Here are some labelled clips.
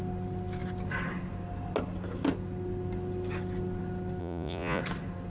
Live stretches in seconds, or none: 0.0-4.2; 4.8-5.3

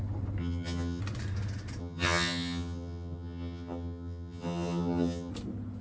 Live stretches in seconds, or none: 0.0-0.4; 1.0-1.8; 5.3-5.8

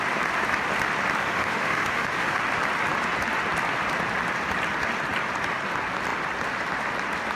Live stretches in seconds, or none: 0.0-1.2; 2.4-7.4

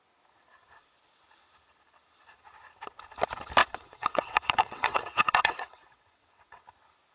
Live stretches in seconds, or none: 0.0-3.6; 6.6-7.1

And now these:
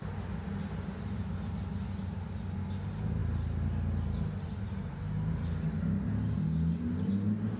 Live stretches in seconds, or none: 0.0-7.6

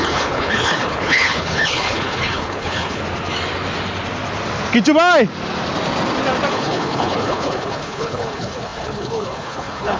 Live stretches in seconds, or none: 3.0-6.5

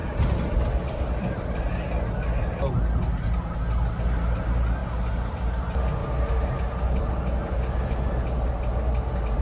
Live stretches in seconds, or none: 0.0-9.4